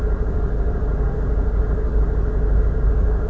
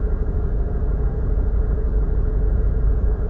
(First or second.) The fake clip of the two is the second